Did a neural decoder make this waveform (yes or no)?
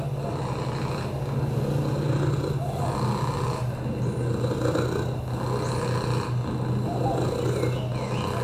no